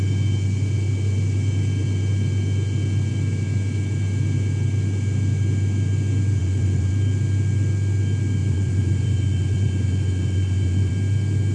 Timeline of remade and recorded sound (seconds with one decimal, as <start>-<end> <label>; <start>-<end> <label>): 0.0-6.4 recorded; 6.4-6.9 remade; 6.9-8.4 recorded; 8.4-10.9 remade; 10.9-11.5 recorded